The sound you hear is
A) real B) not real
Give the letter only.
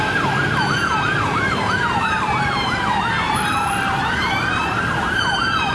B